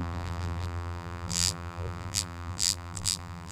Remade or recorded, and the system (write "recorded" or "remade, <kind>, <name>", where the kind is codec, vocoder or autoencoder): remade, vocoder, BigVGAN v2